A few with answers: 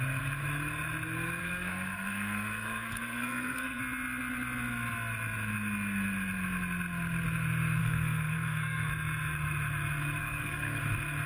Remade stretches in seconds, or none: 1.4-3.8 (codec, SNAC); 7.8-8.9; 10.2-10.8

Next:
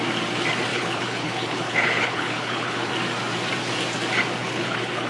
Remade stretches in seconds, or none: 0.7-2.9 (codec, HILCodec); 4.4-5.1

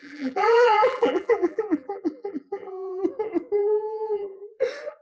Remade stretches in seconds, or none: 0.0-3.0 (vocoder, BigVGAN v2); 3.6-4.6

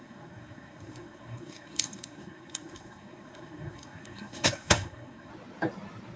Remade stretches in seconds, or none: 0.0-5.3 (codec, SNAC)

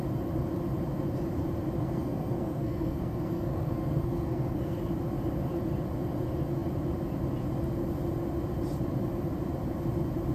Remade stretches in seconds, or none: 1.8-4.8 (codec, SNAC)

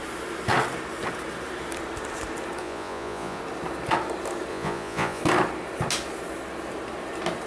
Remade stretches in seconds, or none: 2.6-3.4 (vocoder, Vocos); 4.5-5.2